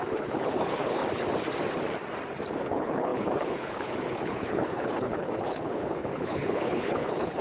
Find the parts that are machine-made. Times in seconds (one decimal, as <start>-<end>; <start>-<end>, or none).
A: 0.0-1.0; 2.6-7.4